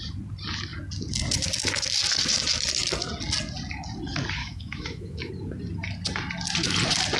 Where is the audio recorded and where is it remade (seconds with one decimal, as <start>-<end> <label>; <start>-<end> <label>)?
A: 0.0-4.4 recorded; 4.4-5.3 remade; 5.3-7.2 recorded

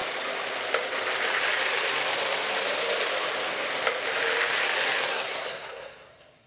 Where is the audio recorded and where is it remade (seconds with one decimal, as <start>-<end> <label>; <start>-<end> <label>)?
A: 0.0-5.1 recorded; 5.1-6.5 remade

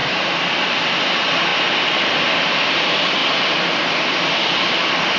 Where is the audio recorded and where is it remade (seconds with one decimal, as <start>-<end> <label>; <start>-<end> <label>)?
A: 0.0-5.2 recorded